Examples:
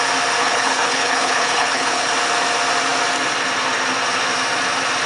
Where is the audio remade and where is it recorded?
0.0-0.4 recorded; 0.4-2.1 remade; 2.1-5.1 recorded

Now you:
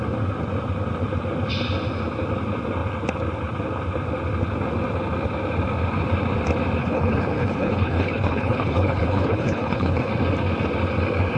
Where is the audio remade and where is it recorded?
0.0-6.8 recorded; 6.8-10.1 remade; 10.1-11.4 recorded